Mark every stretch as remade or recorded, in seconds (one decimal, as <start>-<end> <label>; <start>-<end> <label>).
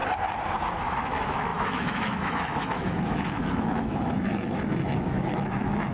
0.0-0.8 recorded; 0.8-5.9 remade